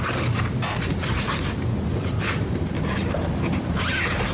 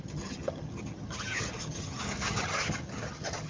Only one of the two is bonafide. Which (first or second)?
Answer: first